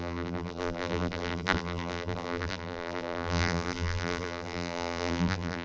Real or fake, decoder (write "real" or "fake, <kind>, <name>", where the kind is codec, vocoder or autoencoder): fake, vocoder, BigVGAN v2